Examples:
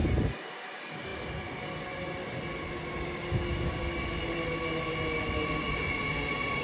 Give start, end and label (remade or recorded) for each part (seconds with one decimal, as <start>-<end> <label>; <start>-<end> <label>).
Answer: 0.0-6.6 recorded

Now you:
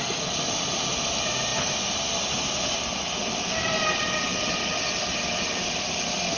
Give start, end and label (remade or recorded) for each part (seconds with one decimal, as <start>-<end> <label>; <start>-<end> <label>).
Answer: 0.0-6.4 recorded

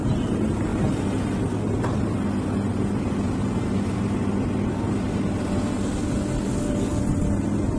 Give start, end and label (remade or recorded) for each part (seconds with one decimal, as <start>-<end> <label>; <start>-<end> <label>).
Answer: 0.0-7.8 recorded

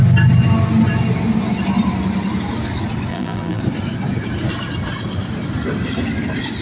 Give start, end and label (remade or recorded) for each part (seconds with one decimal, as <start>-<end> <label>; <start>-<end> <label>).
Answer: 0.0-3.1 recorded; 3.1-3.6 remade; 3.6-6.6 recorded